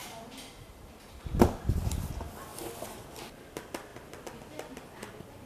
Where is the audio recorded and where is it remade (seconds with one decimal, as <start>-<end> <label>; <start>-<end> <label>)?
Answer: 0.0-5.5 recorded